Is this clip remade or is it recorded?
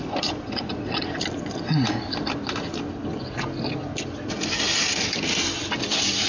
recorded